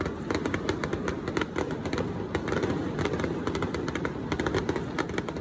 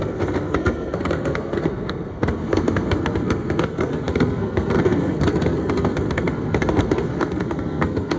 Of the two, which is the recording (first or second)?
first